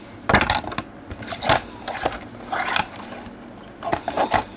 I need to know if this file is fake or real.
real